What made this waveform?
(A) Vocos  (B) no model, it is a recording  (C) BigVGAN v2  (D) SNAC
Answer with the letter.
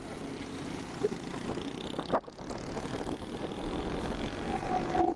B